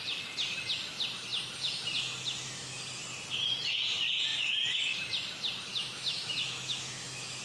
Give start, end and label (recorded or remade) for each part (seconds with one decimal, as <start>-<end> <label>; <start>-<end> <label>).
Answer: 0.0-5.7 recorded; 5.7-7.4 remade